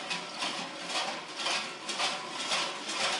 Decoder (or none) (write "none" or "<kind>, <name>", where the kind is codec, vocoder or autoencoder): none